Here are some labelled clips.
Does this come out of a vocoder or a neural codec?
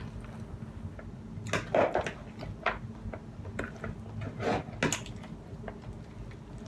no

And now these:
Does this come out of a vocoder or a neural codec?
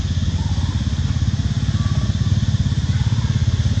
no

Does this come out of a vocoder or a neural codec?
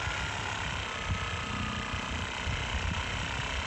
no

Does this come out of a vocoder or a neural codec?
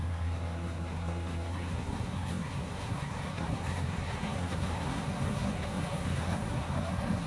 yes